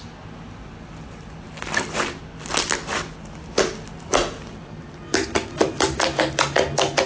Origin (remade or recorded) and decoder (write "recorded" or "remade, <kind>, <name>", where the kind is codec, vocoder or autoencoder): recorded